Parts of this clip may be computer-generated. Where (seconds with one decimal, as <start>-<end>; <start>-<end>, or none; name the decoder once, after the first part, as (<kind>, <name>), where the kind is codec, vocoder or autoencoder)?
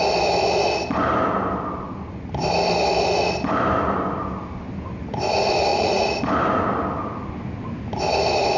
5.7-6.2 (vocoder, Vocos)